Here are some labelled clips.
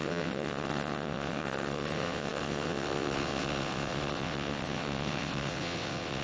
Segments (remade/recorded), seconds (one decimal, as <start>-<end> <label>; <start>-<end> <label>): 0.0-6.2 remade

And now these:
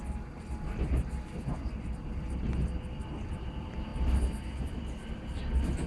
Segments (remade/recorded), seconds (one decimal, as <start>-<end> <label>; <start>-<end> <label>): 0.0-5.9 recorded

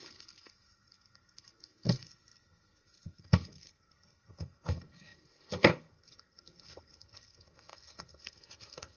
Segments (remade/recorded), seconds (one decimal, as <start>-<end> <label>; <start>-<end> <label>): 0.0-9.0 remade

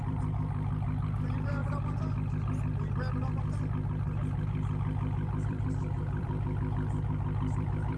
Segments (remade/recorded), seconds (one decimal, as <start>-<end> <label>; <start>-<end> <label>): 0.0-1.6 remade; 1.6-3.7 recorded; 3.7-8.0 remade

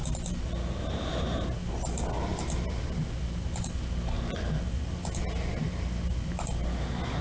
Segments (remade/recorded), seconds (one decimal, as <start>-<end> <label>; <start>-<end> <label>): 0.0-7.2 recorded

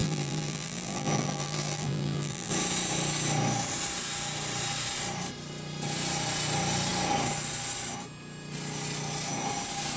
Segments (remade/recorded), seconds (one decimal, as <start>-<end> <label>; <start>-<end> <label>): 0.0-2.5 remade; 2.5-10.0 recorded